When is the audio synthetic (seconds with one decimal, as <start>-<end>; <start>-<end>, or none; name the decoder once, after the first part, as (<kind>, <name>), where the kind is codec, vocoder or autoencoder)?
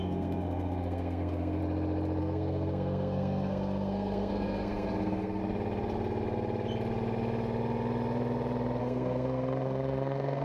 0.0-1.6 (codec, SNAC); 2.2-5.4; 8.8-10.4